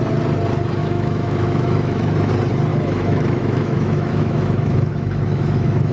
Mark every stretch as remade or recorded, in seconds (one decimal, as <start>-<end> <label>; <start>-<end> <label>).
0.0-0.8 recorded; 0.8-2.3 remade; 2.3-2.7 recorded; 2.7-5.9 remade